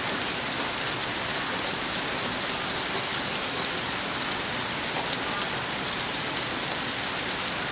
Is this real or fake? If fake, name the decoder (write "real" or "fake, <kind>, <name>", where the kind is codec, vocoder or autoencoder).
real